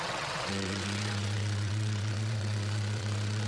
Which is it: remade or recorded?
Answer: remade